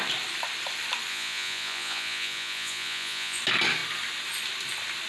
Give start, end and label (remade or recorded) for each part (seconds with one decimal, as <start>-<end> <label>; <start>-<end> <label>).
0.0-1.1 recorded; 1.1-3.4 remade; 3.4-5.1 recorded